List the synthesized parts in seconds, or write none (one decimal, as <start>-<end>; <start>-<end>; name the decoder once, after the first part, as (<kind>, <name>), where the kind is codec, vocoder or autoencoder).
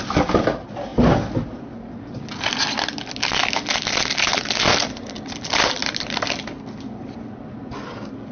none